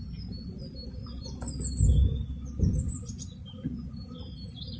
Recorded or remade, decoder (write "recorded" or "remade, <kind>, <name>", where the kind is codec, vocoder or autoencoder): recorded